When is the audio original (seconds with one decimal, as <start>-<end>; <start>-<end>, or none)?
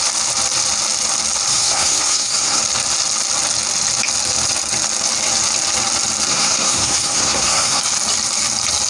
0.0-1.5; 2.6-6.3; 7.8-8.9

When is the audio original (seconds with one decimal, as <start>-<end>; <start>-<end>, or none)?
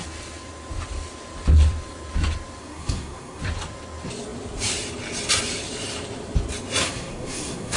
0.0-2.6; 3.4-6.8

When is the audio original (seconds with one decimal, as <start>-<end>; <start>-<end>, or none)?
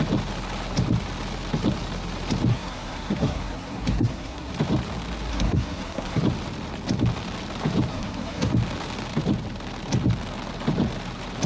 0.0-2.5; 4.5-5.3; 6.2-7.9; 8.5-11.5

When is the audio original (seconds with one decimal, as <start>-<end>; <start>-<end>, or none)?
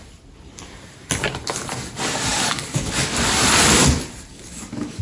0.0-2.3; 3.1-4.3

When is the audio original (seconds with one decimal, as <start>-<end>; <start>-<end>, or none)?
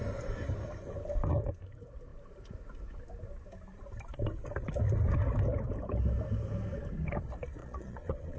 0.0-7.6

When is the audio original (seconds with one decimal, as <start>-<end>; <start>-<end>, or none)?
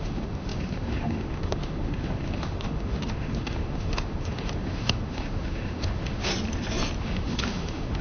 6.3-7.0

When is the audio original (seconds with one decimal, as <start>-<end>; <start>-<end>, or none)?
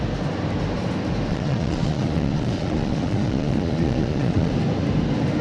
0.0-1.3; 4.5-5.4